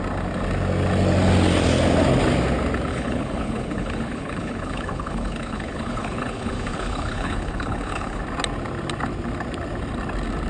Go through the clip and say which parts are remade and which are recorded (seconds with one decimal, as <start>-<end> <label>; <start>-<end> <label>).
0.0-2.9 recorded; 2.9-8.2 remade; 8.2-10.5 recorded